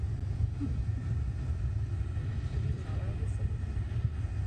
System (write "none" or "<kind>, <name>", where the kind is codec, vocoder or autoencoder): none